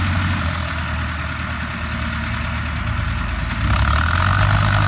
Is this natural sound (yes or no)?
yes